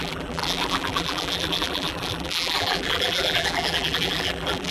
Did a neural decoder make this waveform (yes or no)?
yes